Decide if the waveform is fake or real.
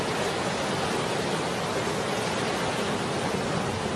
real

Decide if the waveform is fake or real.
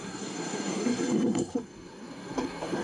fake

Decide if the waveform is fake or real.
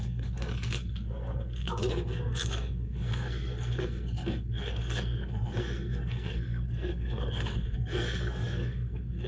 fake